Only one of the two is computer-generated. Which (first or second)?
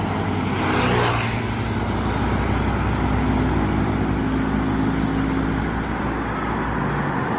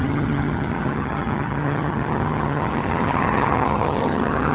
second